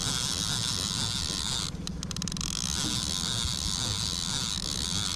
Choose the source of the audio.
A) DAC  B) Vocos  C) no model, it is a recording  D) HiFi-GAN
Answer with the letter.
C